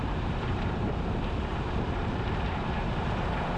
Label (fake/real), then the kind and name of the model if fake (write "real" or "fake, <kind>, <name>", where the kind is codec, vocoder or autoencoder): fake, vocoder, BigVGAN v2